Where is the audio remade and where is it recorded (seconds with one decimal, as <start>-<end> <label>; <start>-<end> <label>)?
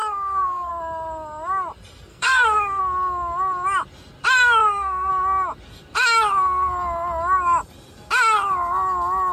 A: 0.0-0.7 remade; 0.7-2.1 recorded; 2.1-2.8 remade; 2.8-4.6 recorded; 4.6-5.1 remade; 5.1-9.3 recorded